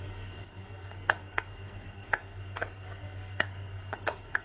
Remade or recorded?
remade